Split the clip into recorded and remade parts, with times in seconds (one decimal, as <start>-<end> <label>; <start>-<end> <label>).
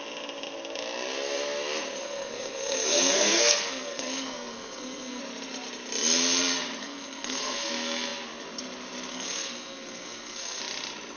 0.0-2.0 recorded; 2.0-5.2 remade; 5.2-6.8 recorded; 6.8-7.7 remade; 7.7-9.1 recorded; 9.1-10.6 remade; 10.6-11.2 recorded